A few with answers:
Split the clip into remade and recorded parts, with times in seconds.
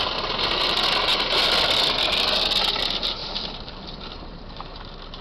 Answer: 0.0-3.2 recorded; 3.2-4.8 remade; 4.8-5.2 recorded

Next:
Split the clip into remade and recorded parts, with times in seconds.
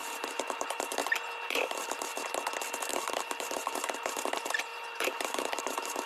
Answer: 0.0-1.0 remade; 1.0-1.5 recorded; 1.5-2.1 remade; 2.1-2.9 recorded; 2.9-6.1 remade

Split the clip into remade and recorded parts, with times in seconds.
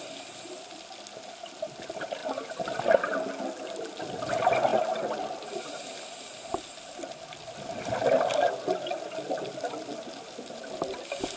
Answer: 0.0-2.2 recorded; 2.2-2.8 remade; 2.8-11.4 recorded